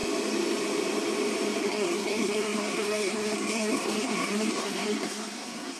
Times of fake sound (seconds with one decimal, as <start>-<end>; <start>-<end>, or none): 1.6-5.8